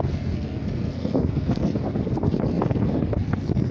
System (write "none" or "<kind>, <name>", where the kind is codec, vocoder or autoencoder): codec, SNAC